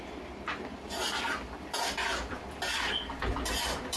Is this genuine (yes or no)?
yes